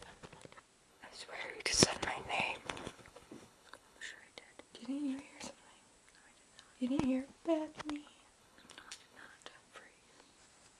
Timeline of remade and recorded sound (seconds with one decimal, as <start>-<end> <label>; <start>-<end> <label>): 0.0-0.9 recorded; 0.9-4.2 remade; 4.2-8.4 recorded; 8.4-9.3 remade; 9.3-10.8 recorded